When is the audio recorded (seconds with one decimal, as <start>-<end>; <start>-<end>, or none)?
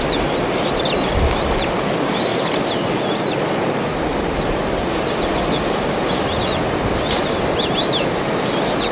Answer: 0.0-2.3; 2.9-4.1; 6.4-8.9